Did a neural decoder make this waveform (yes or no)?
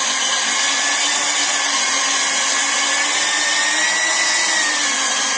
no